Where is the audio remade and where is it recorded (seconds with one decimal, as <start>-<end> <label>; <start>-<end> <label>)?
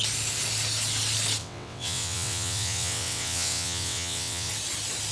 0.0-1.4 recorded; 1.4-4.5 remade; 4.5-5.1 recorded